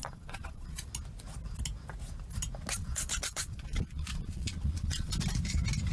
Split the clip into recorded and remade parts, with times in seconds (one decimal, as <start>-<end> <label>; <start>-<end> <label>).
0.0-0.9 remade; 0.9-2.8 recorded; 2.8-5.1 remade; 5.1-5.9 recorded